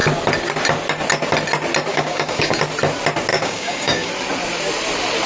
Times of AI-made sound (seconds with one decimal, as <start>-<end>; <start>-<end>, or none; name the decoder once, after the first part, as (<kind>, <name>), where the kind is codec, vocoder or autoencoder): 1.9-2.6 (codec, DAC); 3.3-4.1